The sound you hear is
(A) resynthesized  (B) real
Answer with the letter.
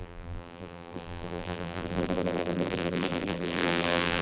A